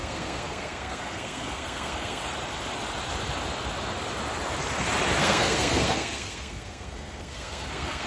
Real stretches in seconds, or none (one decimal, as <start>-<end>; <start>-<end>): 2.2-5.2